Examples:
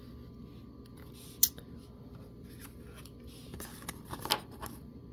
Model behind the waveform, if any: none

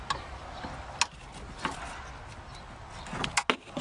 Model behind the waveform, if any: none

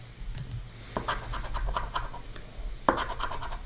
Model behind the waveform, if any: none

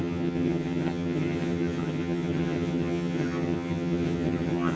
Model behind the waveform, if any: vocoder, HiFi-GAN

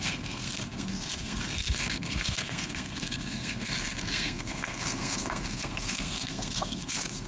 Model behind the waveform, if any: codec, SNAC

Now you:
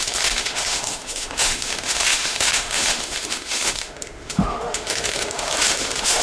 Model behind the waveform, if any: autoencoder, DAC-VAE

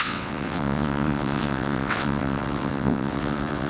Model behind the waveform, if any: vocoder, WaveNeXt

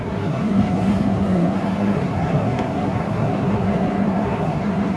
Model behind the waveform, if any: codec, SNAC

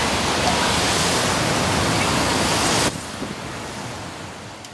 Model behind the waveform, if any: none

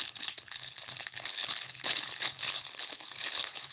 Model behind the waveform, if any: codec, HILCodec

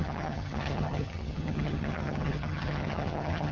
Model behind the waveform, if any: vocoder, HiFi-GAN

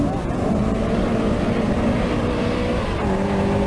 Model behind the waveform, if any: none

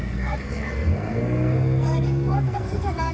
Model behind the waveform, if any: codec, SNAC